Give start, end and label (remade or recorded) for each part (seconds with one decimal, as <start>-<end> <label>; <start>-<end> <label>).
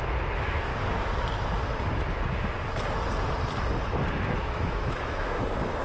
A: 0.0-0.7 remade; 0.7-4.2 recorded; 4.2-5.8 remade